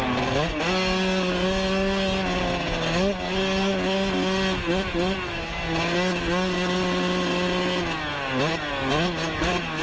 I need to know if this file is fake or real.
real